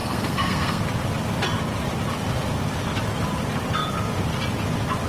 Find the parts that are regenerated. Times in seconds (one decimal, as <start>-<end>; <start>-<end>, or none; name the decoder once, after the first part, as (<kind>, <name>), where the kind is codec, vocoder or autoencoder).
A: 0.0-0.8 (codec, SNAC)